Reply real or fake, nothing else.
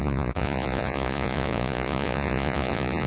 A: fake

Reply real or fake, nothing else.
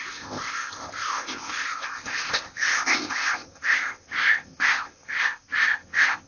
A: fake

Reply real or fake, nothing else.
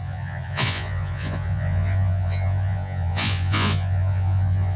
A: fake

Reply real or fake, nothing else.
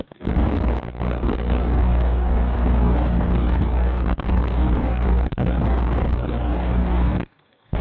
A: fake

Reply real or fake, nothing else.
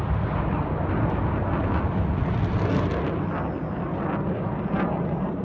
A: real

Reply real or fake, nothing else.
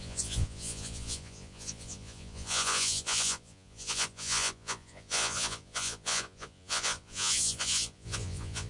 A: fake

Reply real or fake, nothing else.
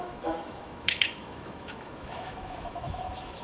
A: fake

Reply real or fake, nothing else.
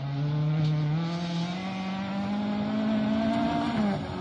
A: real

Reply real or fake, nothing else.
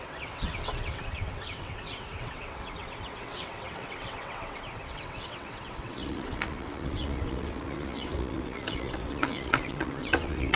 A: fake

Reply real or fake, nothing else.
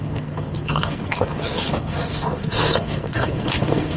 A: fake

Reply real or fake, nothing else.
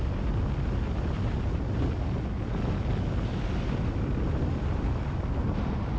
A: real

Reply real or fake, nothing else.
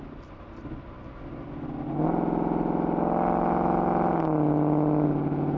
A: real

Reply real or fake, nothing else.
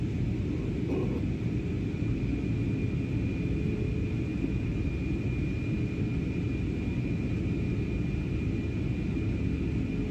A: real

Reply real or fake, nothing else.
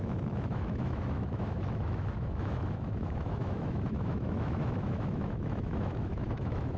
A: fake